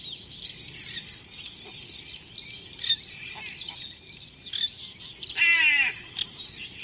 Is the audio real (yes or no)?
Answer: yes